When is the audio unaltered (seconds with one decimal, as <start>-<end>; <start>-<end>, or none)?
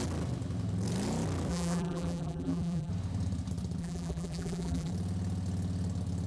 0.0-1.5; 2.9-3.8; 4.9-6.3